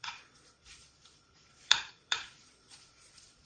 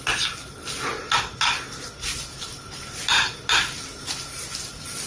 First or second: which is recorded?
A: second